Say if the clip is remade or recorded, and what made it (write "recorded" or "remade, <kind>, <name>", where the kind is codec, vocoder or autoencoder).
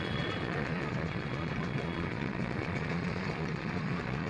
remade, vocoder, Vocos